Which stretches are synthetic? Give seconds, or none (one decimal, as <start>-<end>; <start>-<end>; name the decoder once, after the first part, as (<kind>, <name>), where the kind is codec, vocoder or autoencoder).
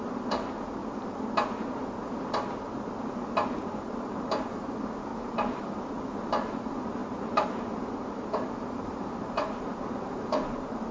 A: 0.0-0.8 (vocoder, BigVGAN v2); 3.6-10.9